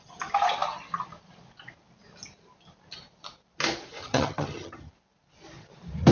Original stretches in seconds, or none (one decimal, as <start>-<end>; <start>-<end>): 0.0-4.0; 4.9-6.1